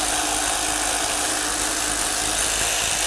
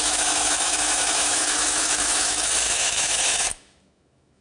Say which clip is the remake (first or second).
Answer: second